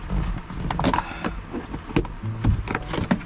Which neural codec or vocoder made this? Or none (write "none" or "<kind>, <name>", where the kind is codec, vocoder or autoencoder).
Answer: none